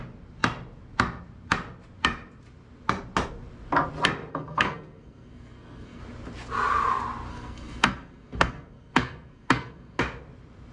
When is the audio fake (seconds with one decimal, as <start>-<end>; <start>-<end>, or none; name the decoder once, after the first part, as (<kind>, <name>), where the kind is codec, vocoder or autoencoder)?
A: 4.3-6.0 (codec, SNAC); 7.3-10.0